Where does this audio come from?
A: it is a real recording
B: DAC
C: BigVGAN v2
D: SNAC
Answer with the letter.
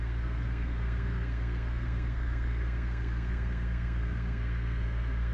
D